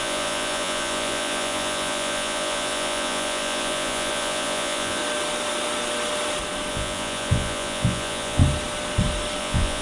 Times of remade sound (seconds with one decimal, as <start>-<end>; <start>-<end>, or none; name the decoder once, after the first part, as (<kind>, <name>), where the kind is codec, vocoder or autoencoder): 0.0-5.0 (vocoder, Vocos); 6.7-8.4; 9.4-9.8